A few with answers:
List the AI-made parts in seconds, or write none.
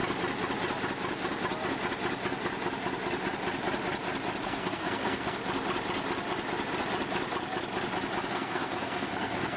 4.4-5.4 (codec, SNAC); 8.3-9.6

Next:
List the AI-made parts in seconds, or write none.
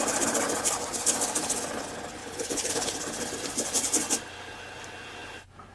2.2-2.9 (codec, HILCodec)